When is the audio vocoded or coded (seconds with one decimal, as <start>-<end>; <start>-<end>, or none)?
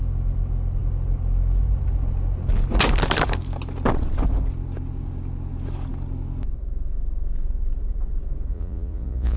8.5-9.4